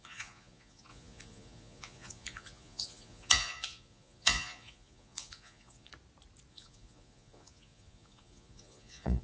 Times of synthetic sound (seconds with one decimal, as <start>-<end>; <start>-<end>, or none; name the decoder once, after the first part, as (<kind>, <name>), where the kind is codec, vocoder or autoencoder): 0.0-5.9 (vocoder, Vocos); 6.5-9.2